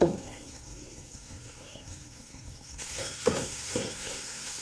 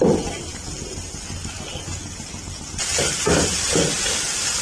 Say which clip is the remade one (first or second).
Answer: first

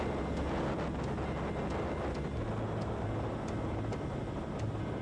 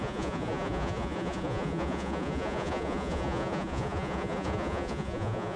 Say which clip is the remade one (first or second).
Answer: second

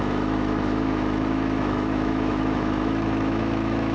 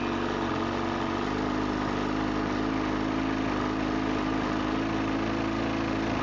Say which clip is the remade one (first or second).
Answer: first